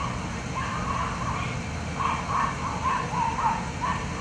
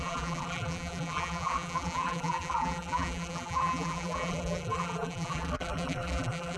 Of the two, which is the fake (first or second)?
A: second